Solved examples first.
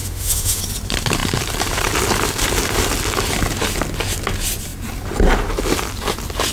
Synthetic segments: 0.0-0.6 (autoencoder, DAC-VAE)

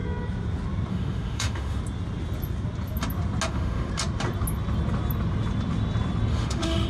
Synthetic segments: 0.9-1.8 (autoencoder, DAC-VAE); 3.5-3.9; 6.3-6.9

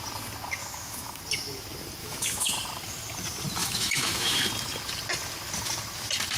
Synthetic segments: 0.6-1.2 (autoencoder, DAC-VAE); 2.0-2.5; 3.6-4.5

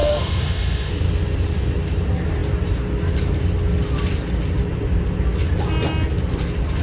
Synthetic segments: 0.0-0.9 (autoencoder, DAC-VAE)